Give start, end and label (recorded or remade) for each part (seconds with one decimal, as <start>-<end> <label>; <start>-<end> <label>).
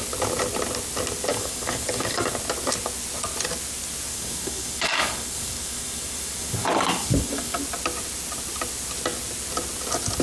0.0-1.3 recorded; 1.3-2.3 remade; 2.3-4.1 recorded; 4.1-7.6 remade; 7.6-10.2 recorded